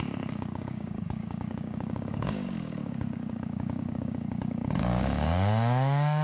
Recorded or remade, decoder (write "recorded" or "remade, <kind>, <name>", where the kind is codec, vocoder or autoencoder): remade, codec, DAC